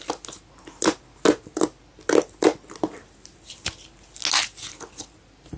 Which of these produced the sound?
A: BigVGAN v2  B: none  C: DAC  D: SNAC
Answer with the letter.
B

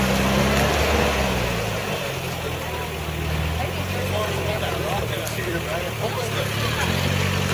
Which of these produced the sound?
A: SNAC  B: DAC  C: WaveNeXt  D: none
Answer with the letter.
D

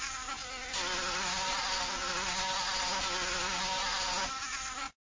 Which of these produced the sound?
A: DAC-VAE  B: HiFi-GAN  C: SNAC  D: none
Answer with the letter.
D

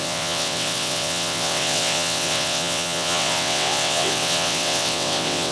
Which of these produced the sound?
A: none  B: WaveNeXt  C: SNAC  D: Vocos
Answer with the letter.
B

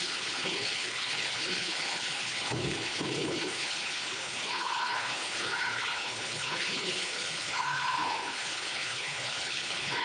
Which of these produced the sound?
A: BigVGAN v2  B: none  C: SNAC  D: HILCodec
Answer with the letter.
D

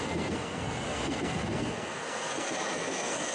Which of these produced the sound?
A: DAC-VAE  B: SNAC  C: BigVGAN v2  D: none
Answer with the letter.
B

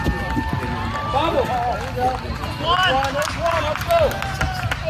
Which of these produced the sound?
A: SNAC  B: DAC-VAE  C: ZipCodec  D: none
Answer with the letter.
D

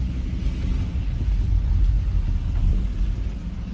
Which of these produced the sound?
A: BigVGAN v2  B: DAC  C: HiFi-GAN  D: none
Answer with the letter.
D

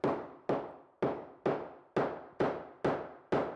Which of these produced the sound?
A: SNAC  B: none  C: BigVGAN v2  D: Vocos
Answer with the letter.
B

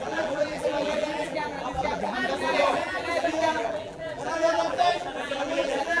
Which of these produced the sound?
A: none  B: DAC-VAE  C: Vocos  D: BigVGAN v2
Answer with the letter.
D